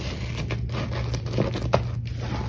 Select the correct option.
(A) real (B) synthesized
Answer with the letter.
A